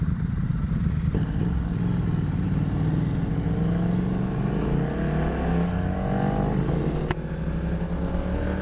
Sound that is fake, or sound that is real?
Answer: real